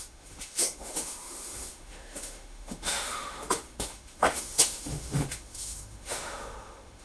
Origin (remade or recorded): remade